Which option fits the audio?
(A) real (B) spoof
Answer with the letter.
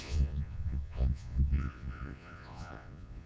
B